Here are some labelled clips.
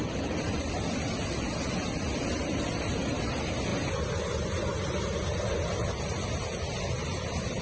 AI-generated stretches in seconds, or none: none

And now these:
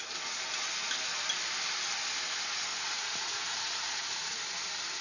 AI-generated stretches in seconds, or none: 2.7-4.4 (vocoder, Vocos)